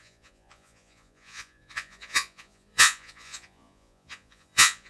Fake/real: fake